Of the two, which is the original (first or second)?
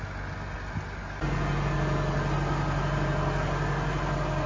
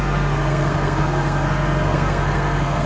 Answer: first